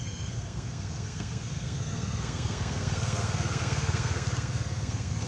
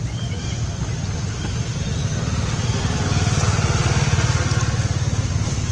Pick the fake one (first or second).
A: first